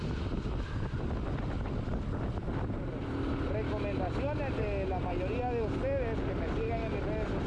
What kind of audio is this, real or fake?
real